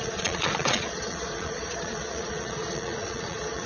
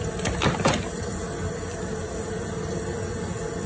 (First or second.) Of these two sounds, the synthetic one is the first